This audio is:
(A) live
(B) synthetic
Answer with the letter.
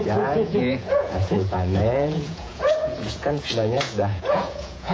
B